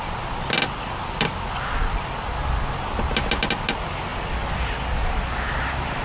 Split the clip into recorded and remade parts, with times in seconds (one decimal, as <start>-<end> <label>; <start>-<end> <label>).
0.0-6.0 recorded